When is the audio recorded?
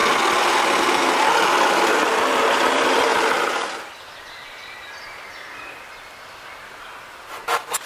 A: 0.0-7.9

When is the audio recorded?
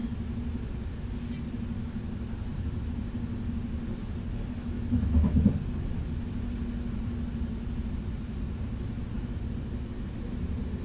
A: 0.0-10.8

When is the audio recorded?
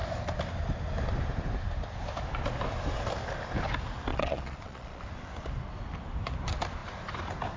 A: 0.0-4.1; 5.0-7.6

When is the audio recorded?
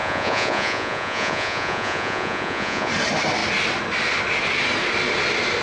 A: 2.9-5.6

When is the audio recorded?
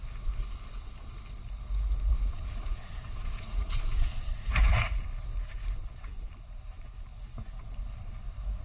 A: 0.0-2.1; 5.0-8.6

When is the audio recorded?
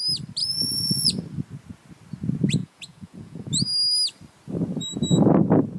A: 0.0-0.4; 1.2-2.6; 3.5-5.8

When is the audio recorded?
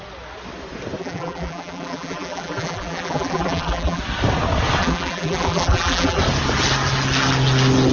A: 0.0-1.0; 4.0-4.8; 6.2-7.9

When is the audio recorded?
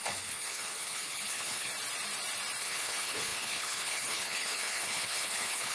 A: 1.7-2.6